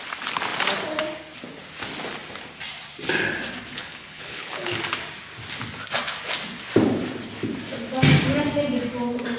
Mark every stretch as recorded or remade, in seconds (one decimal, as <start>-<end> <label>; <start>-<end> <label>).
0.0-3.7 recorded; 3.7-4.8 remade; 4.8-9.4 recorded